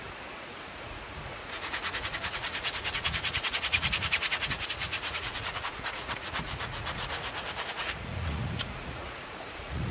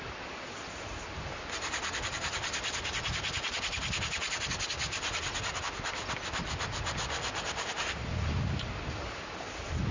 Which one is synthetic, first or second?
first